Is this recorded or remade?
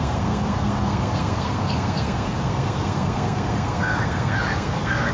remade